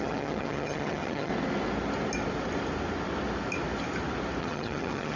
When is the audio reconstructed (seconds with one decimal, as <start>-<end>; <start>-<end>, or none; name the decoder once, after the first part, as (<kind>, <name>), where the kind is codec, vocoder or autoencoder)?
0.0-1.3 (vocoder, HiFi-GAN); 4.4-5.2